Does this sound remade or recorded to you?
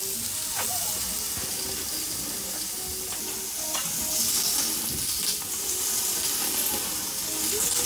recorded